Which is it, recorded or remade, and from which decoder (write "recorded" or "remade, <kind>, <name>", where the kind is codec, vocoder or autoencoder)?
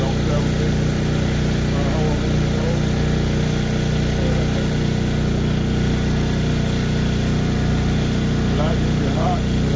recorded